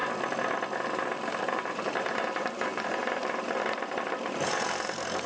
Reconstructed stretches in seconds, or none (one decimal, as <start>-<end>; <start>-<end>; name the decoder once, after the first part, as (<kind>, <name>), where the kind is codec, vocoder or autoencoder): 1.4-5.3 (vocoder, BigVGAN v2)